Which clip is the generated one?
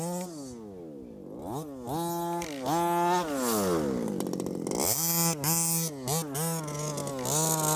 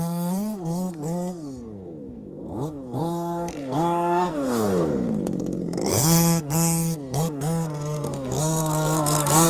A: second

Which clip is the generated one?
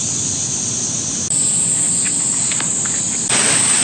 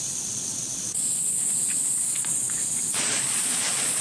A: second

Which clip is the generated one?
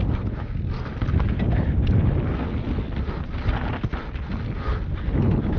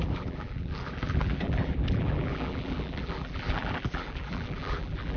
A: second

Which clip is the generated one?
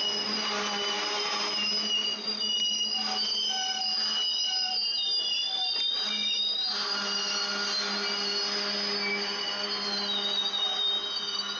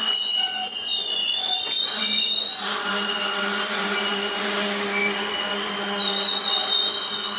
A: second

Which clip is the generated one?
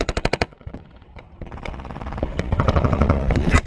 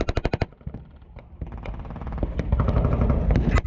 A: first